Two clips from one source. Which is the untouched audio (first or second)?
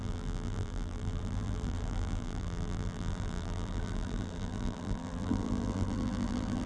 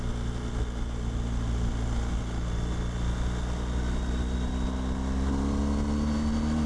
second